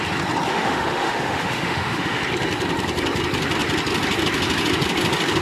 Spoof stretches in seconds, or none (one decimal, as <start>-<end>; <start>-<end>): 0.5-2.2